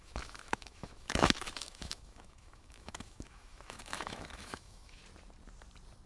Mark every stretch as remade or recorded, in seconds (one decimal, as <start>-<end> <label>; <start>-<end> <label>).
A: 0.0-5.0 remade; 5.0-6.1 recorded